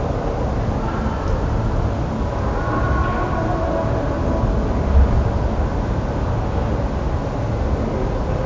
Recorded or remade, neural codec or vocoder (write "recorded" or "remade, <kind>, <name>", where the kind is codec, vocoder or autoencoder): recorded